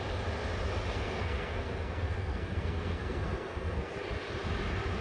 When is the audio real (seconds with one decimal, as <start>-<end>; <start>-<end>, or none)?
0.0-0.9; 3.9-5.0